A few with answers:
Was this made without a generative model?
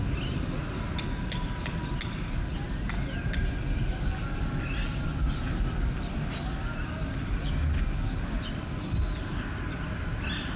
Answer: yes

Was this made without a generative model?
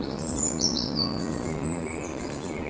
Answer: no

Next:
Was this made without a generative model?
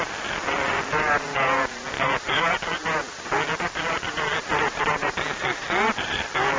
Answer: yes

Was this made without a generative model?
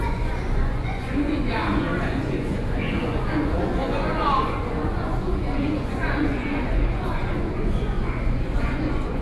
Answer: no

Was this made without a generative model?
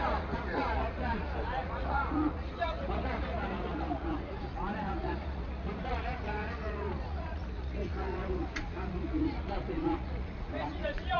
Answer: no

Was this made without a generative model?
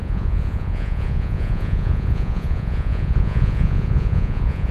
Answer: no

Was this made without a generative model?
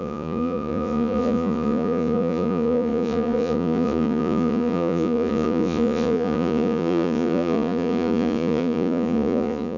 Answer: no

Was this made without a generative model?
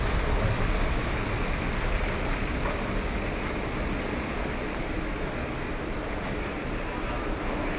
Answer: yes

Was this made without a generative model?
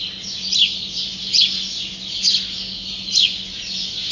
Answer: yes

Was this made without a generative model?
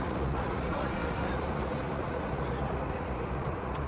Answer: no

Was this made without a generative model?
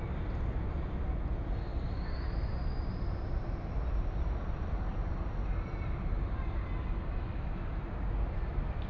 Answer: yes